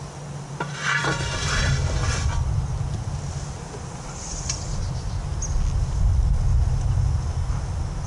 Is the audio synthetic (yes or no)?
no